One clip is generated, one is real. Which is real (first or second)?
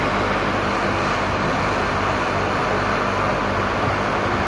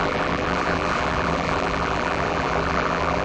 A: first